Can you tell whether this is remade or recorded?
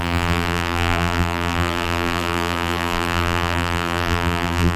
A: remade